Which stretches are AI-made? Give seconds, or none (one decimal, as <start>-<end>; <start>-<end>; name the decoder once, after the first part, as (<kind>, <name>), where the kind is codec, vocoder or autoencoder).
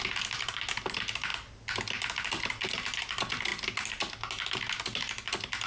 none